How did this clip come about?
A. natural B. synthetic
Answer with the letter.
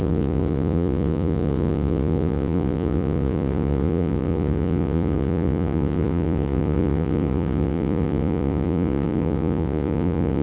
B